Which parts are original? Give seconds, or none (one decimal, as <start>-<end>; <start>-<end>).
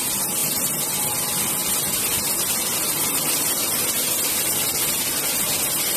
0.0-6.0